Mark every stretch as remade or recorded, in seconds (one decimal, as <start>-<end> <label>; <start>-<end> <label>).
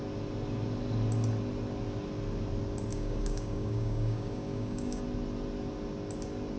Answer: 0.0-2.9 recorded; 2.9-5.0 remade; 5.0-6.6 recorded